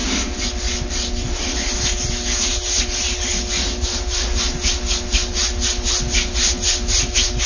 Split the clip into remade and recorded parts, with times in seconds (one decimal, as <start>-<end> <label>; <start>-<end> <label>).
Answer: 0.0-7.5 recorded